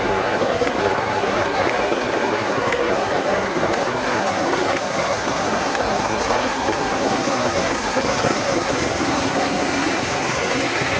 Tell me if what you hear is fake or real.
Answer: fake